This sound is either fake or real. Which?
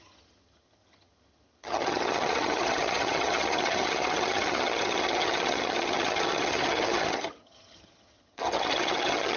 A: fake